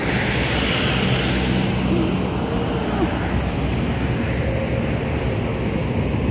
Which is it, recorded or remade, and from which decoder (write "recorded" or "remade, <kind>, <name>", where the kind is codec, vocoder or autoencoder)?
recorded